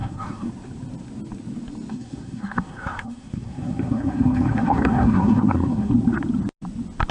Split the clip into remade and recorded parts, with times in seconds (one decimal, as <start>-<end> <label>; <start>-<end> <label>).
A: 0.0-0.5 remade; 0.5-1.9 recorded; 1.9-5.9 remade; 5.9-7.1 recorded